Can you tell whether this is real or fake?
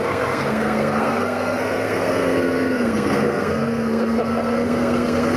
fake